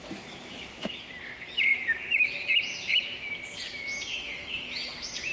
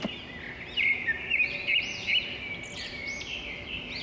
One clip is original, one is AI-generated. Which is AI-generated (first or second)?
first